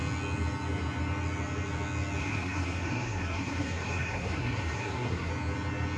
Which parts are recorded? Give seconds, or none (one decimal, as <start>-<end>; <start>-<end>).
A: 0.0-2.2; 5.3-6.0